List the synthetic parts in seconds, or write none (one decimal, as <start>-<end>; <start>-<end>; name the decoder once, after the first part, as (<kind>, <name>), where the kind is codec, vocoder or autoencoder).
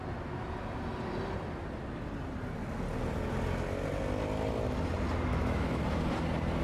5.3-5.8 (autoencoder, DAC-VAE)